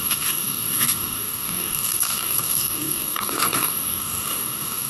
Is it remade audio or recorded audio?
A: remade